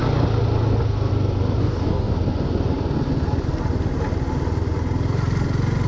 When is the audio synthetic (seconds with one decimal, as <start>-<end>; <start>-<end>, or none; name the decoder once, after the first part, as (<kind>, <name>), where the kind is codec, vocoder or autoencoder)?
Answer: 1.6-2.1 (codec, DAC)